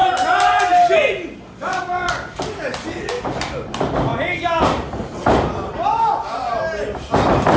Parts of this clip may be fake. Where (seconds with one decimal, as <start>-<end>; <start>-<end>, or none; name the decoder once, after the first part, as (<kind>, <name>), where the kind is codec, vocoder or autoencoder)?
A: 0.0-0.6 (vocoder, BigVGAN v2); 1.0-2.4